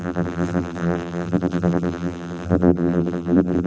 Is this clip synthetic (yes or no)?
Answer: yes